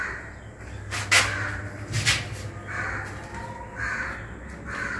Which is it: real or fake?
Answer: real